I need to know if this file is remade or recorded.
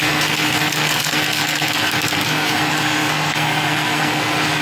remade